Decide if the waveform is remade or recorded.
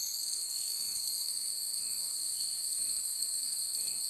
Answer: remade